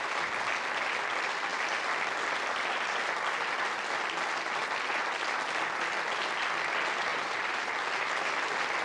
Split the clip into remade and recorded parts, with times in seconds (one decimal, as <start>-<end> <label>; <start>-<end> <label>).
0.0-7.1 recorded; 7.1-7.7 remade; 7.7-8.8 recorded